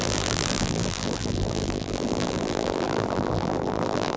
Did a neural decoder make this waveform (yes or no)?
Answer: yes